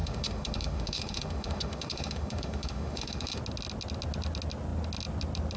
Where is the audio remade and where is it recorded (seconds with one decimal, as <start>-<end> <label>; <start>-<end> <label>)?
0.0-3.4 remade; 3.4-5.6 recorded